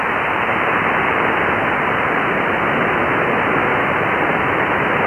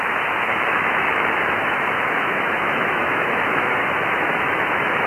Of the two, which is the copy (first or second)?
second